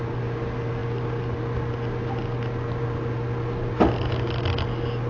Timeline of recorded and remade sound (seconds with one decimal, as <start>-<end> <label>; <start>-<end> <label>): 0.0-5.1 recorded